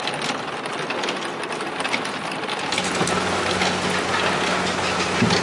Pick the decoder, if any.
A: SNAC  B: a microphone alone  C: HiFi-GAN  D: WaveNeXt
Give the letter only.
B